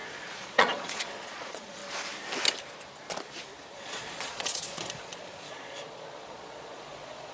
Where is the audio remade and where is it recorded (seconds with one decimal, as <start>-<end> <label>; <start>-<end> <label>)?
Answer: 0.0-1.8 remade; 1.8-3.7 recorded; 3.7-7.3 remade